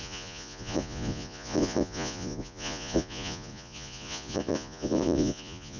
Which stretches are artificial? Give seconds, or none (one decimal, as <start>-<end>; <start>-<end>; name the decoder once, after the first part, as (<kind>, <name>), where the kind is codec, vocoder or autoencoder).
0.0-5.8 (vocoder, Vocos)